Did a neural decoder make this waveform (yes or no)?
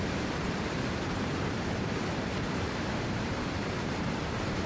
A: yes